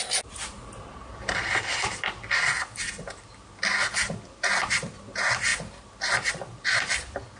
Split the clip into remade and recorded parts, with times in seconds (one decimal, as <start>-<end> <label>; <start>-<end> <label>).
0.0-7.4 recorded

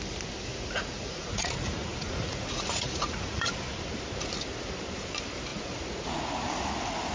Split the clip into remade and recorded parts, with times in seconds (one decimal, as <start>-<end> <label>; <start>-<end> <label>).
0.0-0.5 recorded; 0.5-3.5 remade; 3.5-5.5 recorded; 5.5-6.4 remade; 6.4-7.1 recorded

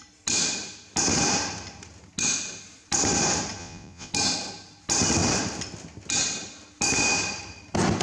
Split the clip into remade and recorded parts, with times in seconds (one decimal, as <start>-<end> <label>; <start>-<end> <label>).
0.0-3.6 recorded; 3.6-4.1 remade; 4.1-8.0 recorded

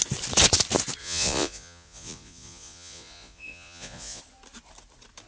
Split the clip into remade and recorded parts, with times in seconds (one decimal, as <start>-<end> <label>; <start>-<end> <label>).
0.0-1.0 recorded; 1.0-4.2 remade; 4.2-5.3 recorded